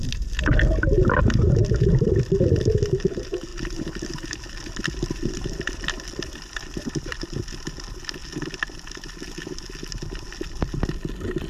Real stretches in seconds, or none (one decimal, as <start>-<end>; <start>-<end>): 0.0-1.6; 2.3-3.5; 7.2-11.5